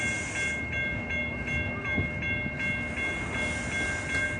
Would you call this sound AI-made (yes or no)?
no